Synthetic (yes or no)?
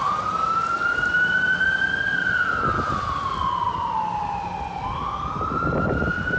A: no